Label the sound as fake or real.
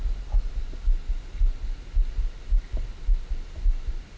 real